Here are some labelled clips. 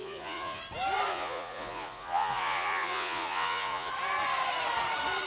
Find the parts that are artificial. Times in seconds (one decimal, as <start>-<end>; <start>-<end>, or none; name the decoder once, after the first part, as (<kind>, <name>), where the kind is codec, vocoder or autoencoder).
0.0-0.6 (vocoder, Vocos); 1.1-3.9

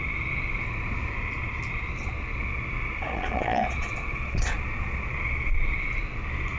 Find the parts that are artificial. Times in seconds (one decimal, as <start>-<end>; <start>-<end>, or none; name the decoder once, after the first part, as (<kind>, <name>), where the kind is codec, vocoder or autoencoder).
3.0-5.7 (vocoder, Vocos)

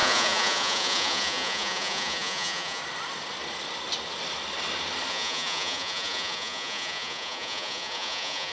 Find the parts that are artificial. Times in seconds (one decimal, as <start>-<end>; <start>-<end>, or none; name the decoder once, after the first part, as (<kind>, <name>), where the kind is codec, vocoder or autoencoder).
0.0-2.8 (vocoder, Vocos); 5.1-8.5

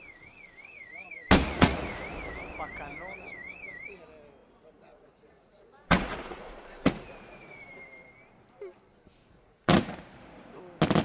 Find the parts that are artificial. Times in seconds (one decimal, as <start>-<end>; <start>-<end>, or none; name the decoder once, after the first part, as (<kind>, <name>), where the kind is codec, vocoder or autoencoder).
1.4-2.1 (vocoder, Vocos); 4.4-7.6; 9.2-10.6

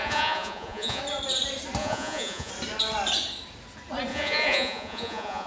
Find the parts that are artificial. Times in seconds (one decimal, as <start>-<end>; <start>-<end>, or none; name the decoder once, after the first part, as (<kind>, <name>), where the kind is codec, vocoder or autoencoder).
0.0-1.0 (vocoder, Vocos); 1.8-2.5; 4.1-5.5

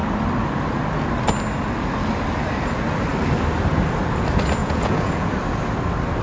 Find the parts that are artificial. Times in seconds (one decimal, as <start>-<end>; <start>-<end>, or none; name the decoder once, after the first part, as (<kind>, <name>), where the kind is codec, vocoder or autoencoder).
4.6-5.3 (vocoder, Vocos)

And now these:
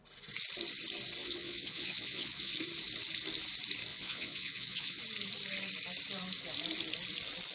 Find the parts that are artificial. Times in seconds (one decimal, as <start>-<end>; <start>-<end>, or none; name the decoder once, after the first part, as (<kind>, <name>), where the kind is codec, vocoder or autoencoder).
1.2-2.5 (vocoder, Vocos); 3.9-5.0